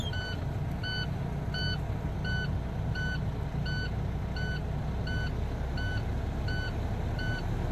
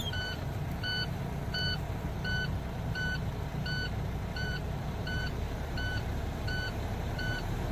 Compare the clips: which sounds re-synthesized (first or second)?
second